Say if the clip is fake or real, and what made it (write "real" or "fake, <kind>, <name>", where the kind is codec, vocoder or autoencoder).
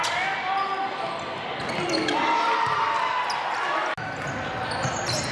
real